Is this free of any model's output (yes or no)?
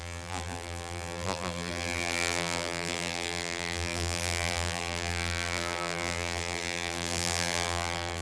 no